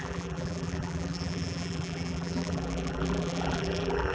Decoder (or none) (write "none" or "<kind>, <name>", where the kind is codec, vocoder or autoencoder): vocoder, BigVGAN v2